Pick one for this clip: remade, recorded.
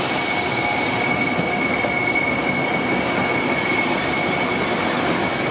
recorded